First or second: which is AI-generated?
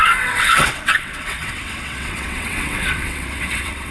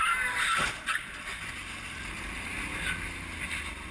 first